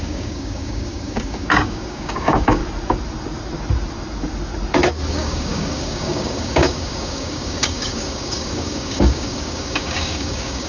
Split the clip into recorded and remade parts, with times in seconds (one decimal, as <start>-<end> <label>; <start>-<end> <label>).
0.0-2.6 remade; 2.6-5.1 recorded; 5.1-10.7 remade